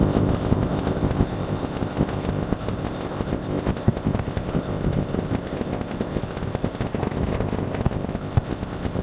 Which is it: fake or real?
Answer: fake